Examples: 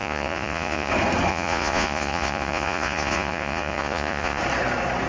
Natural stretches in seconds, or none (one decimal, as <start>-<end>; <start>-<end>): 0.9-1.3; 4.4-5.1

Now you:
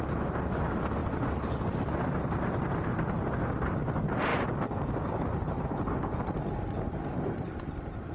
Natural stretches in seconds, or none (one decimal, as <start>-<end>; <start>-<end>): 0.0-8.1

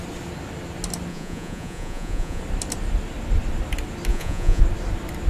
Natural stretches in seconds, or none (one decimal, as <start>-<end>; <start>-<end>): 0.0-1.1; 2.4-4.1; 4.6-5.3